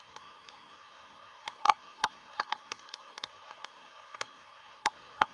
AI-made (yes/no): yes